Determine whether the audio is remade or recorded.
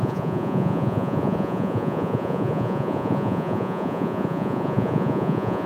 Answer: remade